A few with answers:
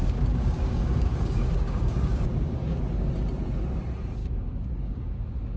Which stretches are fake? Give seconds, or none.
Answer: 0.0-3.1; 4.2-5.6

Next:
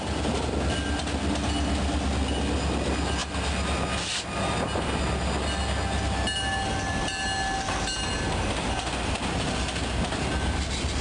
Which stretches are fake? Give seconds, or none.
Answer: none

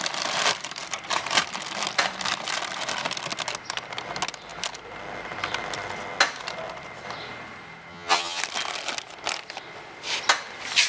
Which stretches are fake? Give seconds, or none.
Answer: 7.9-8.4

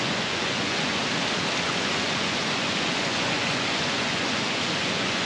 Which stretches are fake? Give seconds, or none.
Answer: 0.0-1.0; 1.6-5.3

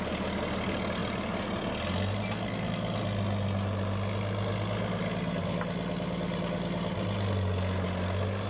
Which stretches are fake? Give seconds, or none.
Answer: none

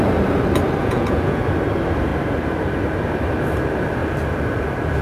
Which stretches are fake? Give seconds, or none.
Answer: 0.8-1.4

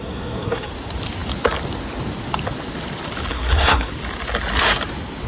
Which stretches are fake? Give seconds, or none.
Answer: 0.0-0.7; 3.3-3.9

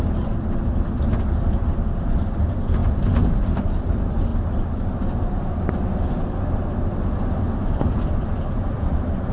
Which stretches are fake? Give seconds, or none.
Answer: none